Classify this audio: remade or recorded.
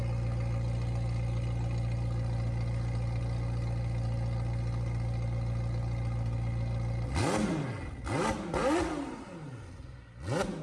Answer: recorded